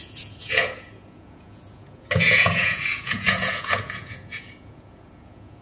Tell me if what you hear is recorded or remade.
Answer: remade